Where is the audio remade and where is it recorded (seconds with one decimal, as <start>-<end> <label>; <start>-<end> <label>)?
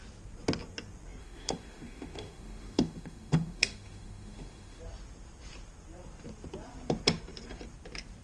0.0-1.2 recorded; 1.2-4.8 remade; 4.8-8.2 recorded